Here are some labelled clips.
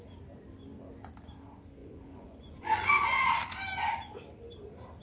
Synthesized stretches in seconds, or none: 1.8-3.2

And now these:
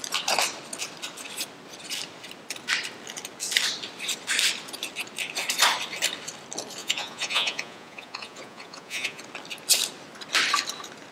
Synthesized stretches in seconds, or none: 6.8-9.2

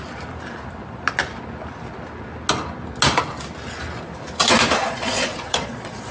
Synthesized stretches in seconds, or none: 4.8-6.1

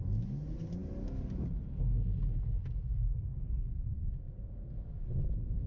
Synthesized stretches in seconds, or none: none